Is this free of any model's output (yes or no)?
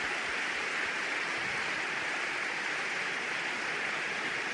yes